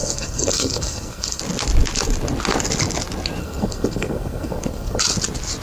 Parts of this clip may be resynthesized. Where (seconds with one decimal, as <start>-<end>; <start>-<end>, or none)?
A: 0.0-1.4; 3.4-5.0